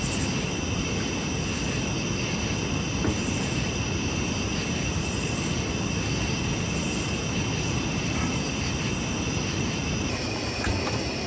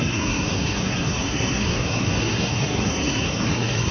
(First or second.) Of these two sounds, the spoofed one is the second